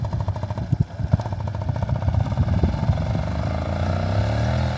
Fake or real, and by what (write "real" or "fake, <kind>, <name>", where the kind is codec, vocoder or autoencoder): real